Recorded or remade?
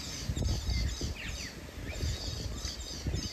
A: recorded